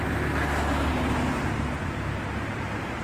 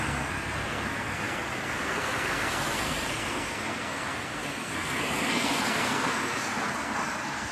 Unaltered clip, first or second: first